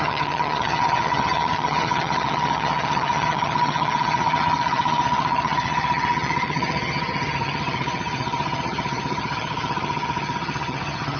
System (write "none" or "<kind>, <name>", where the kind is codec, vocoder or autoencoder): vocoder, HiFi-GAN